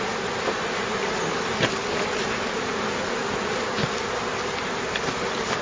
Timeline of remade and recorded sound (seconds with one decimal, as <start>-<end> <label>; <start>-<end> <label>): 0.0-5.6 recorded